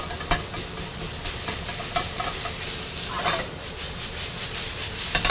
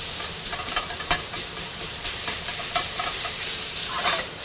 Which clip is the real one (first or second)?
first